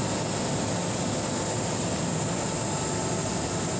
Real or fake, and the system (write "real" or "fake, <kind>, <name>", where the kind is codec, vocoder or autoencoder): real